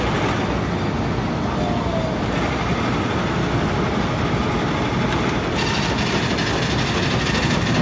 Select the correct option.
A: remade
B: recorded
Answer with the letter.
B